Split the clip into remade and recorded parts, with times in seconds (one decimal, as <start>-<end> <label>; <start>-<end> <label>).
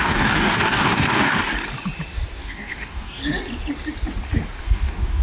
0.0-1.4 remade; 1.4-2.4 recorded; 2.4-3.2 remade; 3.2-4.6 recorded; 4.6-5.2 remade